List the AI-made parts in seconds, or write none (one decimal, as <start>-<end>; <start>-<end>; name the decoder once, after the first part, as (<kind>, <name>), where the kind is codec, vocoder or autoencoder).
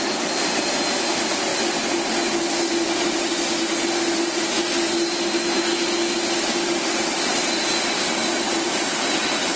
none